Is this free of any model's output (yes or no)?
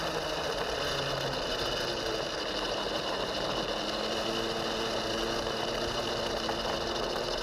yes